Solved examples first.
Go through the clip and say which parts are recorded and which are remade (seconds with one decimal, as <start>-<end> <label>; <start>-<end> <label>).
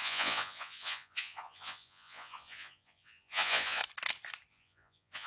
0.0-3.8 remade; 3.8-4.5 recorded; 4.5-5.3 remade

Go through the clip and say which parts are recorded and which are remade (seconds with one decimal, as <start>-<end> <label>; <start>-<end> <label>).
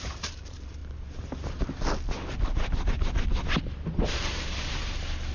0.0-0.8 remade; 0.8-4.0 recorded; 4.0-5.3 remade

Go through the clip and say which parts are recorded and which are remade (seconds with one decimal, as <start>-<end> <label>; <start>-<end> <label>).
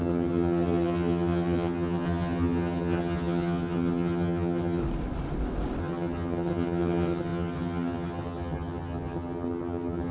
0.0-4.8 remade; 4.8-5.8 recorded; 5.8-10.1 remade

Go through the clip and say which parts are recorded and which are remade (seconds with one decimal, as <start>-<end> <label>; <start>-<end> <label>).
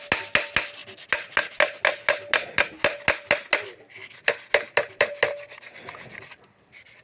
0.0-7.0 recorded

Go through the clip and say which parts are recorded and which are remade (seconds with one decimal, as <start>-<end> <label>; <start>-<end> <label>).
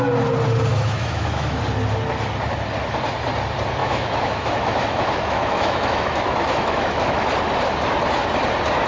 0.0-0.7 recorded; 0.7-1.6 remade; 1.6-3.8 recorded; 3.8-7.2 remade; 7.2-8.9 recorded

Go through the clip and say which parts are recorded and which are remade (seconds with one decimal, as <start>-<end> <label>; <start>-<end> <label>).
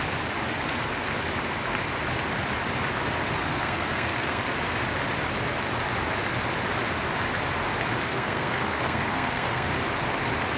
0.0-3.4 recorded; 3.4-4.4 remade; 4.4-8.1 recorded; 8.1-9.7 remade; 9.7-10.6 recorded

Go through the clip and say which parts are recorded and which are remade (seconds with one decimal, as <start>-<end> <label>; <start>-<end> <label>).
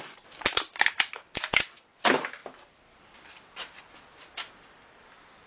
0.0-2.4 recorded; 2.4-3.9 remade; 3.9-5.5 recorded